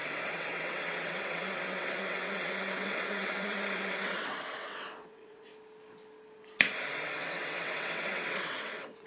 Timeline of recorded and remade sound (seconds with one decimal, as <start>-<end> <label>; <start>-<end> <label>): 0.0-5.5 remade; 5.5-6.9 recorded; 6.9-9.1 remade